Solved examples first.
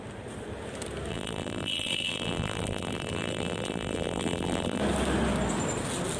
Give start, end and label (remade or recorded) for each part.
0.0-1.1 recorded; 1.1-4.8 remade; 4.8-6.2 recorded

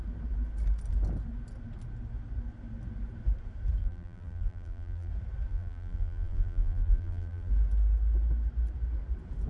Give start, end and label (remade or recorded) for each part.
0.0-3.8 recorded; 3.8-5.1 remade; 5.1-5.5 recorded; 5.5-7.5 remade; 7.5-9.5 recorded

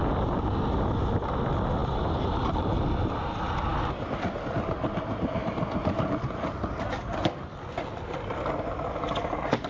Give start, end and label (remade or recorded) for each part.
0.0-1.8 recorded; 1.8-3.0 remade; 3.0-3.7 recorded; 3.7-4.3 remade; 4.3-9.7 recorded

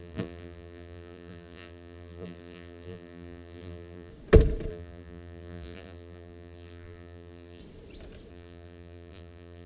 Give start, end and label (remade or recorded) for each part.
0.0-4.1 remade; 4.1-4.7 recorded; 4.7-7.6 remade; 7.6-8.3 recorded; 8.3-9.7 remade